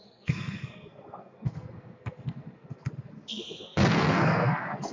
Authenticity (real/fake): fake